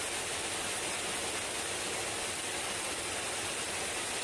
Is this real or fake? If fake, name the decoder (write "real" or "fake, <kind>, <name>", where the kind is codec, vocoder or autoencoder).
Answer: real